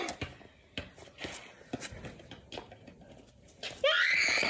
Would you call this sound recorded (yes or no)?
yes